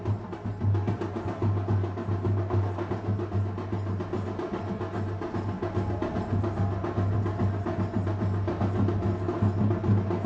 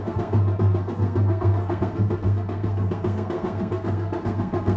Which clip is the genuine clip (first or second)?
first